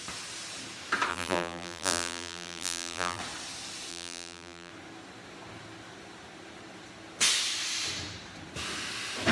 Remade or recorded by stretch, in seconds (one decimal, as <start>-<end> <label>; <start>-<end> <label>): 0.0-1.1 recorded; 1.1-3.2 remade; 3.2-3.9 recorded; 3.9-4.7 remade; 4.7-9.3 recorded